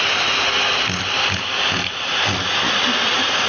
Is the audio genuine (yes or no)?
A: yes